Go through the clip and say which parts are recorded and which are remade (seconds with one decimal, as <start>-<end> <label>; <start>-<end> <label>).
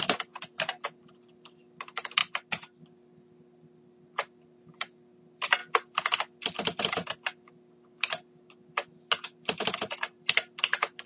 0.0-11.1 recorded